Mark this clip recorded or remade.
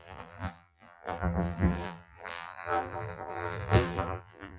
remade